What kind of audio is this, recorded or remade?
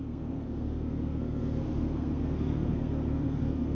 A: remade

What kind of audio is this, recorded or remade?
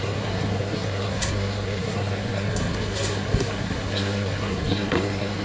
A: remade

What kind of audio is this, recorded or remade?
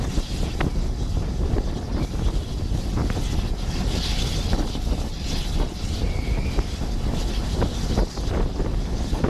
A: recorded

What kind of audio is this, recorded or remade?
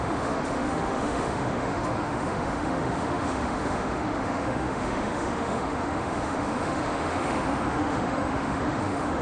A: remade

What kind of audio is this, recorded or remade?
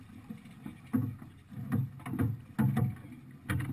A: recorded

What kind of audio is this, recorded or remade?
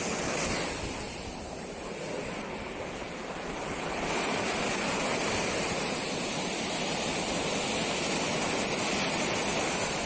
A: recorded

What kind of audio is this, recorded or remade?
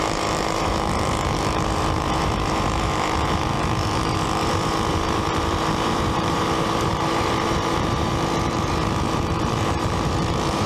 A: remade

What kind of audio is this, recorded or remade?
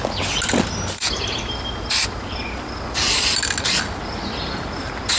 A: recorded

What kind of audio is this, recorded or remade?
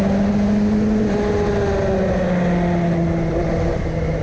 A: recorded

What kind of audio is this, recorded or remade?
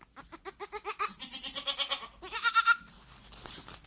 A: recorded